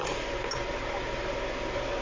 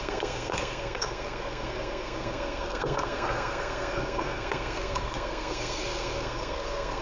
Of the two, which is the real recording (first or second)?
first